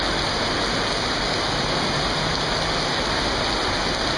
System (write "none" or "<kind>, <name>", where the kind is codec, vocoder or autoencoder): none